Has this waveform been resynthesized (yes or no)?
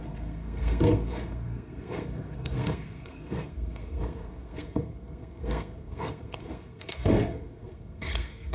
yes